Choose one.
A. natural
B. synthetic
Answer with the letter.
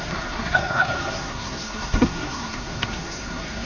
B